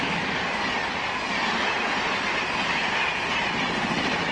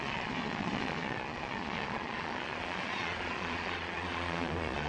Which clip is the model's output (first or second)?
second